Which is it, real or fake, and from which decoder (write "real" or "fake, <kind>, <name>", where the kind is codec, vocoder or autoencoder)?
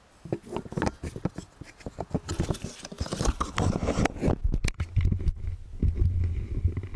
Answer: real